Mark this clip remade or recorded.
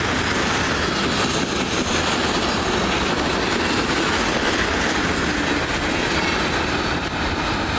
recorded